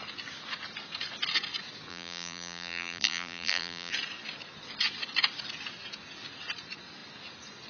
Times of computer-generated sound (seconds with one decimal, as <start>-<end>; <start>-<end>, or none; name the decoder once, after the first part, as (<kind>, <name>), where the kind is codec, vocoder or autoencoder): 1.9-3.9 (vocoder, BigVGAN v2)